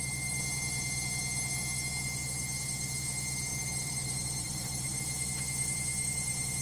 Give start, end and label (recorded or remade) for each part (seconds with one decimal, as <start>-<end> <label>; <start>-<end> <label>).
0.0-3.5 recorded; 3.5-5.0 remade; 5.0-6.6 recorded